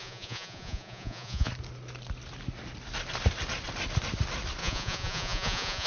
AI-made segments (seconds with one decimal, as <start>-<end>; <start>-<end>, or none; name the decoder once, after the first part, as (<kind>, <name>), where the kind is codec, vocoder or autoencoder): 0.0-1.5 (vocoder, Vocos); 4.6-5.9